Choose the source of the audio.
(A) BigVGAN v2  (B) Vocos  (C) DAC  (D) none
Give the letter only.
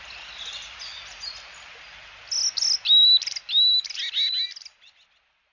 D